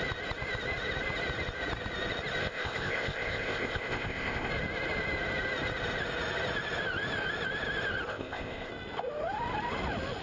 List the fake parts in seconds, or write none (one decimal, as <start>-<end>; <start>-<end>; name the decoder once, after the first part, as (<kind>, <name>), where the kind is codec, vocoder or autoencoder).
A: 2.4-4.5 (codec, ZipCodec); 8.1-8.7